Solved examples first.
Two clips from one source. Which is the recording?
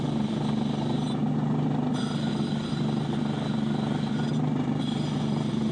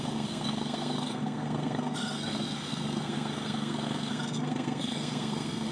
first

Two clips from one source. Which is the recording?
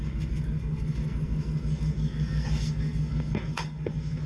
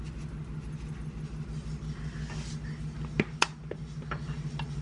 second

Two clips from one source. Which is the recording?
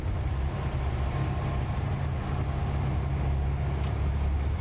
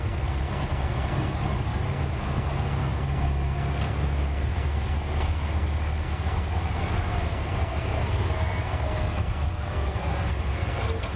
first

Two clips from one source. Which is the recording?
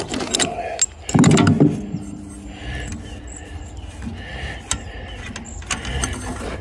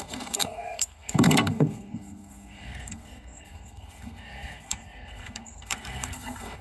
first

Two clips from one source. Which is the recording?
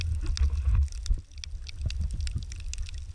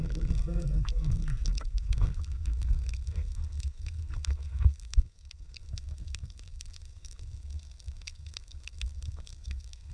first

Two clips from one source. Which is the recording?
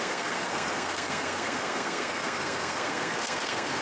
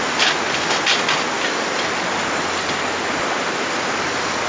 second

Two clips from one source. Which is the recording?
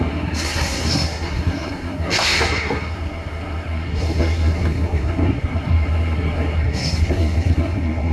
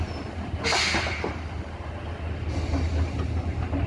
second